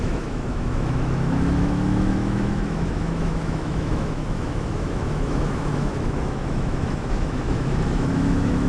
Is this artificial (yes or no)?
yes